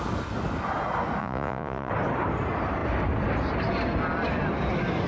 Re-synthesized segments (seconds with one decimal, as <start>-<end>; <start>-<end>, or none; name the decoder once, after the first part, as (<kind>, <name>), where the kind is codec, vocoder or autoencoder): 1.2-1.9 (vocoder, Vocos)